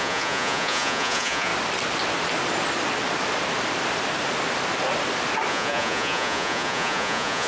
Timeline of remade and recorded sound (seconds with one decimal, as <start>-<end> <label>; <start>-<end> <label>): 0.0-1.5 remade; 1.5-5.5 recorded; 5.5-7.5 remade